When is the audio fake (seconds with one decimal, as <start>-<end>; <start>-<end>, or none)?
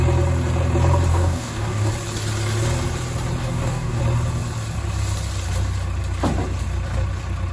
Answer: 1.1-1.9; 3.4-4.0